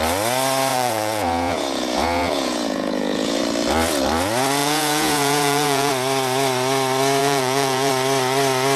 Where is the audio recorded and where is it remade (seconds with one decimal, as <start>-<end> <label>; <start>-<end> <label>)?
0.0-0.7 recorded; 0.7-3.4 remade; 3.4-4.6 recorded; 4.6-5.9 remade; 5.9-7.2 recorded; 7.2-7.9 remade; 7.9-8.8 recorded